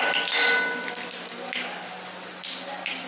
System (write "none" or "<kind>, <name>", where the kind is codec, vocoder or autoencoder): none